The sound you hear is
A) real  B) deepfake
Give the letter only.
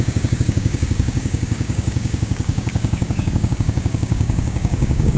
B